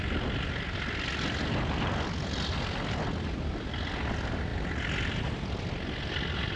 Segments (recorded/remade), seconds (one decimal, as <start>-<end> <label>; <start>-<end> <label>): 0.0-6.6 recorded